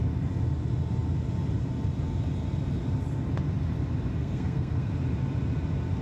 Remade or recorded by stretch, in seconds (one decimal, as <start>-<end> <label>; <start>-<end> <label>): 0.0-4.2 recorded; 4.2-4.9 remade; 4.9-6.0 recorded